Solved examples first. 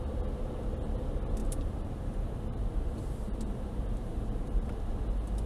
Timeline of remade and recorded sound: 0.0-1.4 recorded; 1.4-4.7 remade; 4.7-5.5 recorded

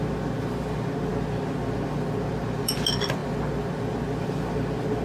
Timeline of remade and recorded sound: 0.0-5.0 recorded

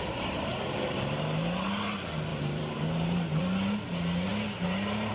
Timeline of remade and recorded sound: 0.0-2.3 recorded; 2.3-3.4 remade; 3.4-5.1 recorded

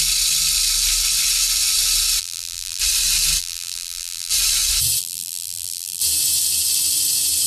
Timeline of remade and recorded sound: 0.0-2.2 recorded; 2.2-2.8 remade; 2.8-3.4 recorded; 3.4-4.3 remade; 4.3-5.0 recorded; 5.0-6.0 remade; 6.0-7.5 recorded

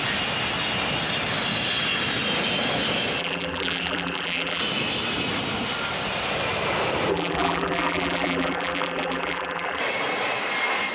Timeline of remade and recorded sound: 0.0-3.2 recorded; 3.2-4.6 remade; 4.6-7.1 recorded; 7.1-9.8 remade; 9.8-10.9 recorded